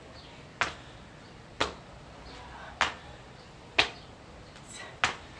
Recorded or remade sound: recorded